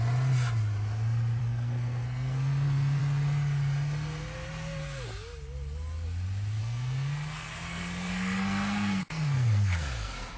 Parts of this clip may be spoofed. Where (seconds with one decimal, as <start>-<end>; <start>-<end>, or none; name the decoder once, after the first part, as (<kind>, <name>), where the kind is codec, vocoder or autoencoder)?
1.4-3.0 (codec, SNAC); 6.6-10.4